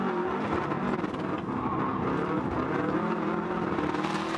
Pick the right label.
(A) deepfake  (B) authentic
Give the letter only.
B